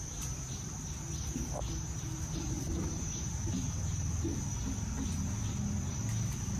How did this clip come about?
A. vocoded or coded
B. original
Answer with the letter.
B